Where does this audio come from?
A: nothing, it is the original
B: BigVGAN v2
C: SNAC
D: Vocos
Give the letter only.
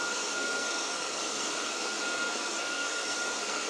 C